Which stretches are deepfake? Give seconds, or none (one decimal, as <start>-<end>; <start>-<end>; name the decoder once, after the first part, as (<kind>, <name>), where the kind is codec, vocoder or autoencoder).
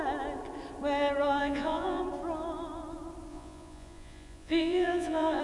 1.4-2.0 (vocoder, Vocos); 3.3-5.4